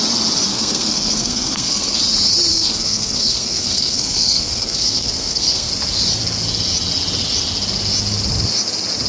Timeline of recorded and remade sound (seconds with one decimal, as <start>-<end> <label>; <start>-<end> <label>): 0.0-0.5 recorded; 0.5-2.0 remade; 2.0-2.5 recorded; 2.5-5.7 remade; 5.7-9.1 recorded